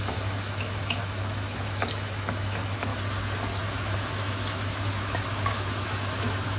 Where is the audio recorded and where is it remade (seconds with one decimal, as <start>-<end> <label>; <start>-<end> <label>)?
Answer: 0.0-2.9 remade; 2.9-3.7 recorded; 3.7-6.6 remade